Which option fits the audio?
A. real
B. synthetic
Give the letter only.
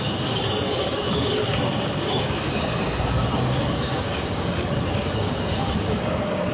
B